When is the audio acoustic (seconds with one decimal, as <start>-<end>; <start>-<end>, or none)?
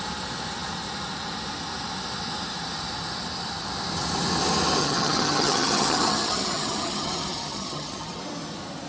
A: 0.0-4.8; 8.2-8.9